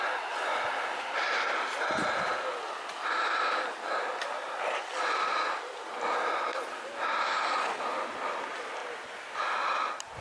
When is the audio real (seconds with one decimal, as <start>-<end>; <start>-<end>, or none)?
0.0-10.2